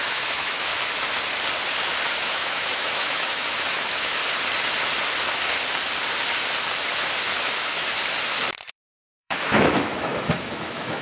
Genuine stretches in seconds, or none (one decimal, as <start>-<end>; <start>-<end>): 0.7-2.1; 4.2-7.4; 7.9-8.7